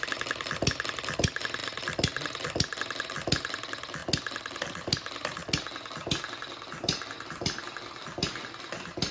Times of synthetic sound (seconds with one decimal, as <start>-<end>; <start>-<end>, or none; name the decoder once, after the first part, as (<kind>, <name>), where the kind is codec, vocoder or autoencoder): none